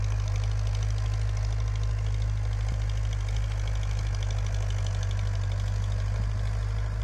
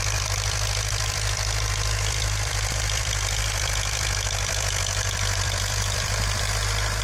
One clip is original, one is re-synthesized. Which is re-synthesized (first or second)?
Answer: second